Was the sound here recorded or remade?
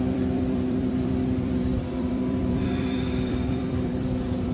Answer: remade